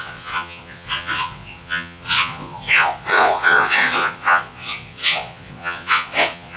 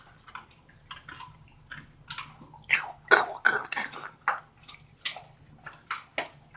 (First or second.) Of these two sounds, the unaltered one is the second